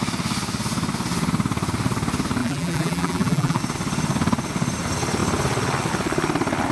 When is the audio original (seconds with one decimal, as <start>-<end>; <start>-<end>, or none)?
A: 0.0-2.4; 3.6-6.7